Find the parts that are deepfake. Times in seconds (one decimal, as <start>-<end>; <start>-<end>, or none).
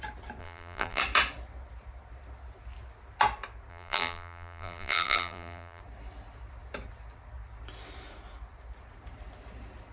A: 0.4-1.0; 3.7-5.8